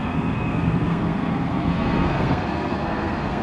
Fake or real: fake